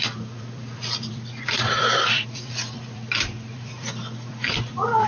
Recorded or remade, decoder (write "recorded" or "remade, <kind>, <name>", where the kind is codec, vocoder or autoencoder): remade, vocoder, BigVGAN v2